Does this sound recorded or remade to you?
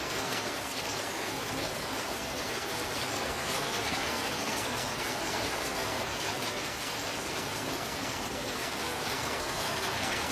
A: remade